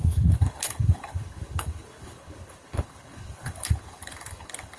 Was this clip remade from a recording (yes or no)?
yes